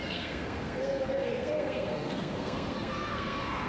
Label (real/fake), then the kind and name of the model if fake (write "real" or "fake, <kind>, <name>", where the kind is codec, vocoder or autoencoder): fake, codec, SNAC